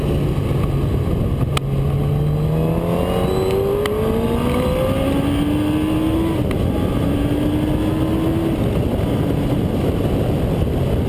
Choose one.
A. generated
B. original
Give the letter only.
B